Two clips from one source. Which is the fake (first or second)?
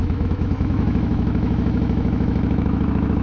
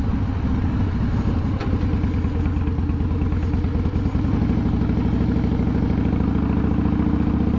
first